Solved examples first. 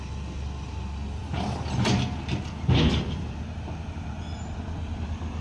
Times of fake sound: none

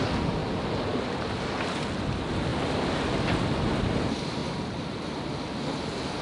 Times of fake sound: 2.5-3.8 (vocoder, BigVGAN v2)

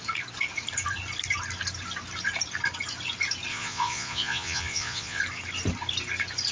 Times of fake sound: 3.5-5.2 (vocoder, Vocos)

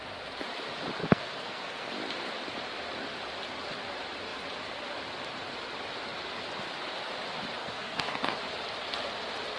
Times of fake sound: 1.0-1.9 (codec, SNAC); 7.6-8.4

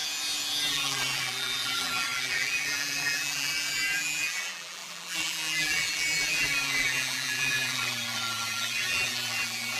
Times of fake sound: 0.7-9.8 (vocoder, BigVGAN v2)

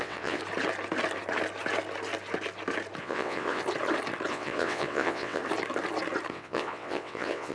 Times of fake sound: 0.0-0.4 (vocoder, WaveNeXt); 3.0-3.6; 4.3-5.4; 6.3-7.5

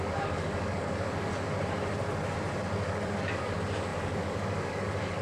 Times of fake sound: 0.0-1.3 (codec, DAC); 2.6-5.2

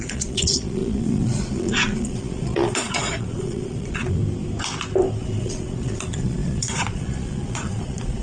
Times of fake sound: 0.0-4.2 (vocoder, Vocos); 5.2-8.2